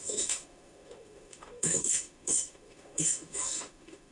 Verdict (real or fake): fake